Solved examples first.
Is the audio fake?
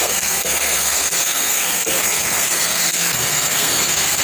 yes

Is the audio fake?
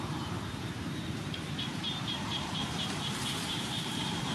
yes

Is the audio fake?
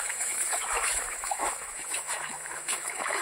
yes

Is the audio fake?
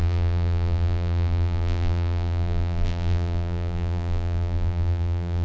yes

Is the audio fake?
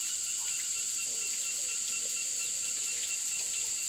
no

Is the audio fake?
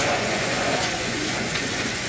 yes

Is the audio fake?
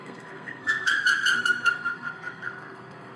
yes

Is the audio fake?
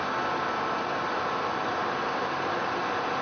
no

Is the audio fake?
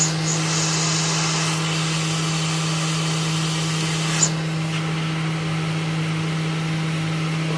no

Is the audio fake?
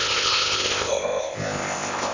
yes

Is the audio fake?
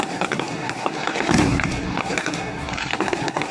yes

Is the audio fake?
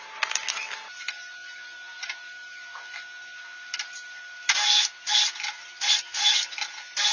no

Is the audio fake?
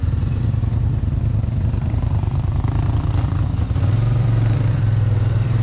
yes